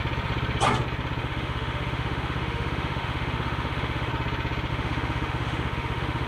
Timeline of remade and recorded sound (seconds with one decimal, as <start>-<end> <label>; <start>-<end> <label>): 0.0-1.2 recorded; 1.2-4.1 remade; 4.1-4.7 recorded; 4.7-6.3 remade